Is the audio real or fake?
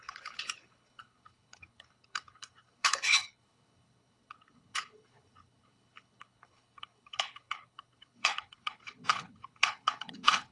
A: fake